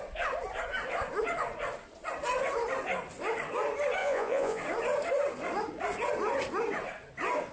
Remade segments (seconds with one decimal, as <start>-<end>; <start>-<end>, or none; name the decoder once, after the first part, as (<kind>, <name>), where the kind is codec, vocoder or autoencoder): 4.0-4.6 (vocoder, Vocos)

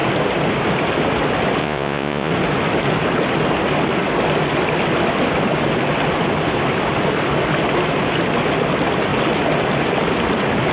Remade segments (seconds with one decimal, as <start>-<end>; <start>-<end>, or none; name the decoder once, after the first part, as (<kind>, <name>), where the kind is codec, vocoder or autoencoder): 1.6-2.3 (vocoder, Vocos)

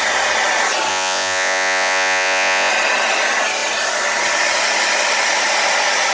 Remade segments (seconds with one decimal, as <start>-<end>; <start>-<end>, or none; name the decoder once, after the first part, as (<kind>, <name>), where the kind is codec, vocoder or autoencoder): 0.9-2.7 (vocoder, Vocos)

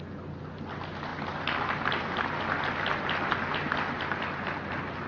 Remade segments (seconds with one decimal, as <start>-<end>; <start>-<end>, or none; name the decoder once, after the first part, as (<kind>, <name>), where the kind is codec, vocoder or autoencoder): none

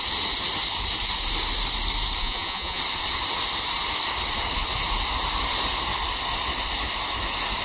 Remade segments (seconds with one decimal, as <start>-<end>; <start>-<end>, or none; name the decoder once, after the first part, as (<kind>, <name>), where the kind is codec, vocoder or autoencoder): 2.2-2.8 (vocoder, Vocos)

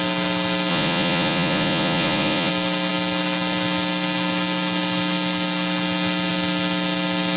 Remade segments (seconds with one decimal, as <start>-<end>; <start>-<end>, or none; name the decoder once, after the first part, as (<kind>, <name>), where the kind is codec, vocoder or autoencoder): 0.7-2.5 (vocoder, Vocos)

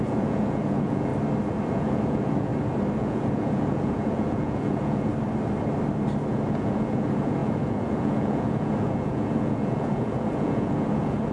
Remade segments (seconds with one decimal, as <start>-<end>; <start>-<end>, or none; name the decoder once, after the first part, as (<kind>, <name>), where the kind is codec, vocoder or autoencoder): 0.0-1.1 (vocoder, Vocos); 1.7-2.5; 3.0-5.1; 6.3-11.3

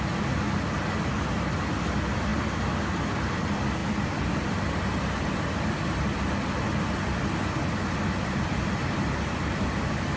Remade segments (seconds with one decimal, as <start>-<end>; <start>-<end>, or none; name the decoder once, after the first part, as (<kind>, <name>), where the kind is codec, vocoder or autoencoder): none